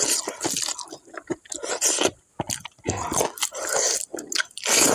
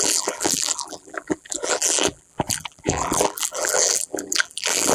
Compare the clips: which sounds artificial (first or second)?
second